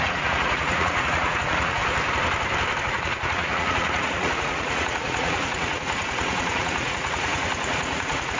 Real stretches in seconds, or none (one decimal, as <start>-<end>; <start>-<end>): 1.8-2.8